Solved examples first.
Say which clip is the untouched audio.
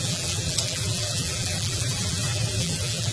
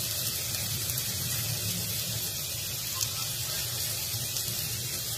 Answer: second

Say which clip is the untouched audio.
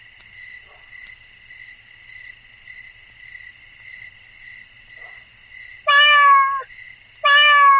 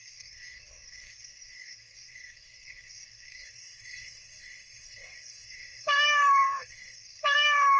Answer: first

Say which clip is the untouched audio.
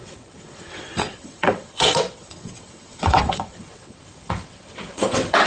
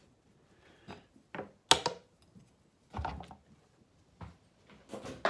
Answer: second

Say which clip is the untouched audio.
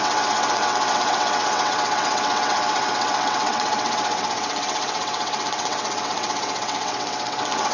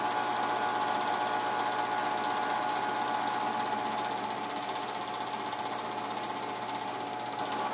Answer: second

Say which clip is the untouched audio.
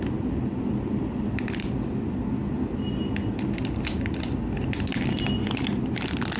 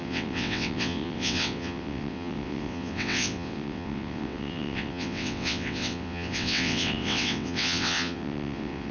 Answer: first